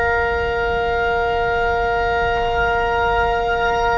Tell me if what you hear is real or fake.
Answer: real